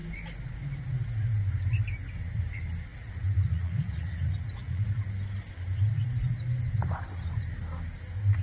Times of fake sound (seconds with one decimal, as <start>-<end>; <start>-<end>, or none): 2.9-5.0